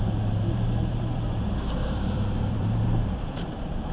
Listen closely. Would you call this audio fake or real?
fake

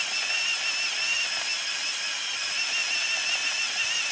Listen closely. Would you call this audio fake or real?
real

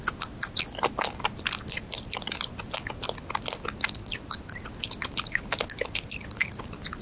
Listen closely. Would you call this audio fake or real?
real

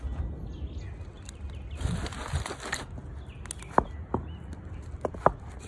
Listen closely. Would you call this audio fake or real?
real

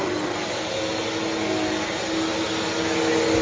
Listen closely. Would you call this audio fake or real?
real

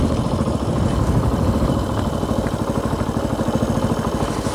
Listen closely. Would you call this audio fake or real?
real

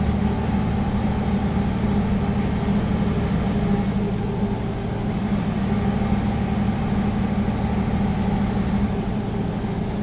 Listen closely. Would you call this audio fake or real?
real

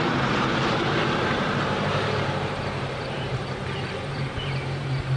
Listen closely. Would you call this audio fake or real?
fake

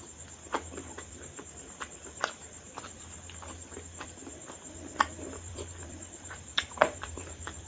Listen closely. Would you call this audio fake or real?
fake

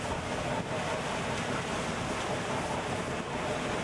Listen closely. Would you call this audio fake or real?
real